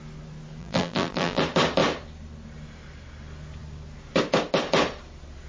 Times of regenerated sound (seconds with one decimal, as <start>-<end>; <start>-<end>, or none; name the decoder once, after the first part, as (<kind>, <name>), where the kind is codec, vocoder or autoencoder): 0.6-1.4 (vocoder, BigVGAN v2)

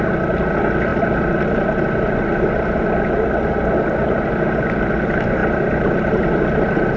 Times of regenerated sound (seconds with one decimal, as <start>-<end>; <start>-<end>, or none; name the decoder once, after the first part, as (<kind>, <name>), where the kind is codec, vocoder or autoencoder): 5.4-5.9 (vocoder, BigVGAN v2)

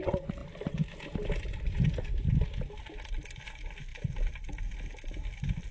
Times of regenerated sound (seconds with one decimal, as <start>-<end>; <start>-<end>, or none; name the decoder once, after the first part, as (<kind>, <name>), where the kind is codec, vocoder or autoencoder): 3.9-4.6 (vocoder, BigVGAN v2)

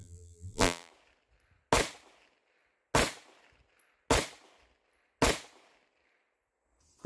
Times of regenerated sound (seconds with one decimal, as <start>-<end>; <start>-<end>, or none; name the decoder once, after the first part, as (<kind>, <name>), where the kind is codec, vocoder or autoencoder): 0.0-0.9 (vocoder, BigVGAN v2)

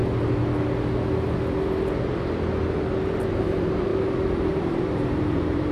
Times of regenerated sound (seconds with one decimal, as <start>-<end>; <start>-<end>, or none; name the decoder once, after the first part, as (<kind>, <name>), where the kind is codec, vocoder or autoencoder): 3.4-3.9 (vocoder, BigVGAN v2); 4.5-5.7